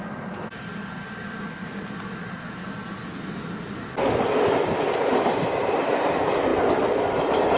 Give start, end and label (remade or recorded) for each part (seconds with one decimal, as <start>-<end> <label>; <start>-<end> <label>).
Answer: 0.0-7.6 recorded

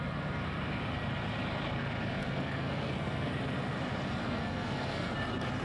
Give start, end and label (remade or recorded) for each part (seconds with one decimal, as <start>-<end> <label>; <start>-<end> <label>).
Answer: 0.0-2.2 recorded; 2.2-3.3 remade; 3.3-4.2 recorded; 4.2-5.1 remade; 5.1-5.6 recorded

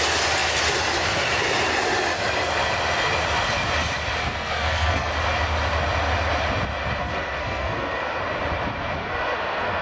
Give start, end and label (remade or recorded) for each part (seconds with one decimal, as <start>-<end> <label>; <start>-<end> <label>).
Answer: 0.0-4.2 recorded; 4.2-5.1 remade; 5.1-7.0 recorded; 7.0-8.2 remade; 8.2-9.0 recorded; 9.0-9.8 remade

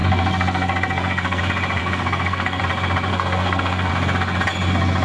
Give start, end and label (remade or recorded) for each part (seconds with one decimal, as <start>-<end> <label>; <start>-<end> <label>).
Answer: 0.0-1.4 remade; 1.4-1.8 recorded; 1.8-2.6 remade; 2.6-3.1 recorded; 3.1-3.9 remade; 3.9-5.0 recorded

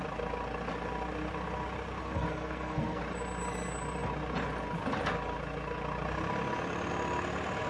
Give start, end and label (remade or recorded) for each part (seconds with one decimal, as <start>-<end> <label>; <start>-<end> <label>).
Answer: 0.0-2.0 recorded; 2.0-3.0 remade; 3.0-7.7 recorded

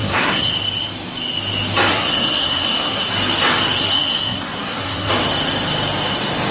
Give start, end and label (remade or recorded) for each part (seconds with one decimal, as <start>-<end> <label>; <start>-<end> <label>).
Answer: 0.0-0.5 remade; 0.5-1.9 recorded; 1.9-3.1 remade; 3.1-3.8 recorded; 3.8-5.1 remade; 5.1-6.5 recorded